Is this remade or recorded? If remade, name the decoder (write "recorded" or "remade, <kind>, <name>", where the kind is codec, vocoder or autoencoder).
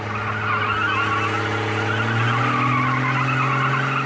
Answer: recorded